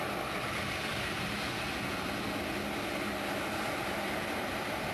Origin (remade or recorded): recorded